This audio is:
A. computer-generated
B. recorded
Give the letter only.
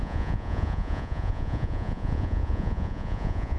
A